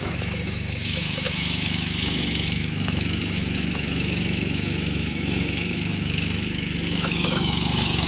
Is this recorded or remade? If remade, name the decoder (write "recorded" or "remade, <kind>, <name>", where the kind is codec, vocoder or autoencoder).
remade, autoencoder, DAC-VAE